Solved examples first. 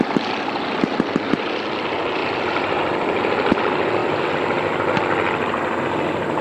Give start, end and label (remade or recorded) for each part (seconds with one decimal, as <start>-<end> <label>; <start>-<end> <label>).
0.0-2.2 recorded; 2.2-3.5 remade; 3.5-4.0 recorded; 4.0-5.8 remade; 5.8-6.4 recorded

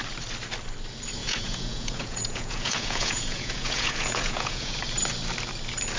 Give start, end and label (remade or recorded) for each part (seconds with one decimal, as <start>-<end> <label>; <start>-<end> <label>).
0.0-1.2 recorded; 1.2-4.8 remade; 4.8-6.0 recorded

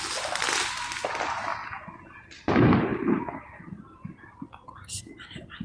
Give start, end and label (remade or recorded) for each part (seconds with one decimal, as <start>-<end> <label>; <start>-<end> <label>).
0.0-2.9 recorded; 2.9-3.8 remade; 3.8-5.6 recorded

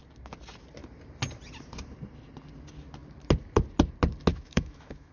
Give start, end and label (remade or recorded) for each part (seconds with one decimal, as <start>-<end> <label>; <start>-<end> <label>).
0.0-4.3 recorded; 4.3-5.1 remade